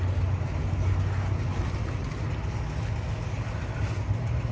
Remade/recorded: recorded